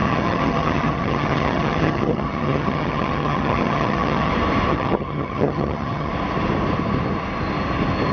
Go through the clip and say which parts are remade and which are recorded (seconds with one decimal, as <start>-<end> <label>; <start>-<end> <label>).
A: 0.0-4.3 remade; 4.3-4.7 recorded; 4.7-6.1 remade; 6.1-8.1 recorded